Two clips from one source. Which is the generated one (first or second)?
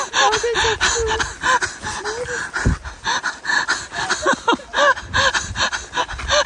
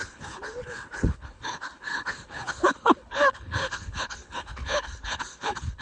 second